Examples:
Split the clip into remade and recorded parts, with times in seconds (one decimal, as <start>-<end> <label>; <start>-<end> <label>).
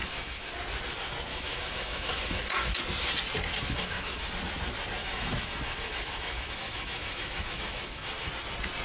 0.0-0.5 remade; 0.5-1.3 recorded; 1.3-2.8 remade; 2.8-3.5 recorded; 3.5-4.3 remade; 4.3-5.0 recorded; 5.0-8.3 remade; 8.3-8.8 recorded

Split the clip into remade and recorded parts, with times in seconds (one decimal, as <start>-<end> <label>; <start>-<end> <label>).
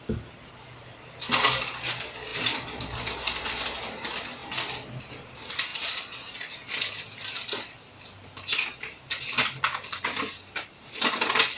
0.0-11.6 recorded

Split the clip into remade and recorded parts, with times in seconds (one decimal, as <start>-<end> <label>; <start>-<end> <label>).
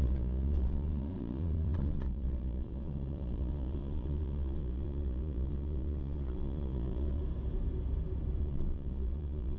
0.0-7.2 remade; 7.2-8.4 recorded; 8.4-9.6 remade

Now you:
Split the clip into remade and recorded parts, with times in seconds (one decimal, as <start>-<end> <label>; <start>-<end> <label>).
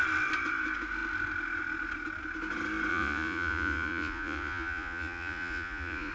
0.0-2.9 recorded; 2.9-6.1 remade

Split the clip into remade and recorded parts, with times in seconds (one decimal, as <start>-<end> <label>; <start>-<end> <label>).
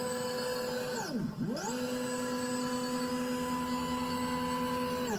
0.0-5.2 recorded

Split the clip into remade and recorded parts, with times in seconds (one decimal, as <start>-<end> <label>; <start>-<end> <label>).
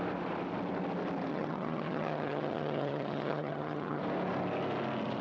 0.0-1.3 recorded; 1.3-4.0 remade; 4.0-5.2 recorded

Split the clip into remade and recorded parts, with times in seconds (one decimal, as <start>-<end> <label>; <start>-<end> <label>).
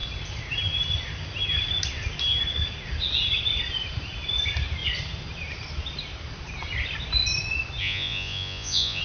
0.0-7.8 recorded; 7.8-9.0 remade